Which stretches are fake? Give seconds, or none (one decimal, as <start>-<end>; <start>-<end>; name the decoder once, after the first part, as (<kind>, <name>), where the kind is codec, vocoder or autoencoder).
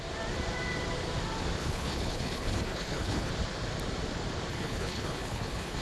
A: 1.6-3.3 (codec, HILCodec); 4.5-5.8